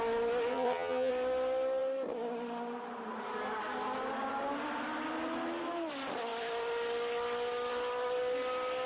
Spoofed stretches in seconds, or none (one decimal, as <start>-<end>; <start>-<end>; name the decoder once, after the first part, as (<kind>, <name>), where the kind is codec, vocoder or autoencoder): 0.5-1.1 (vocoder, HiFi-GAN)